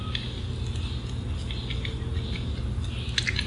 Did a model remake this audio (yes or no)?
no